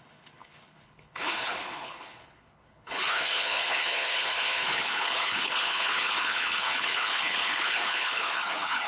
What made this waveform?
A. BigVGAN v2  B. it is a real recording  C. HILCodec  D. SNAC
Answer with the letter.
C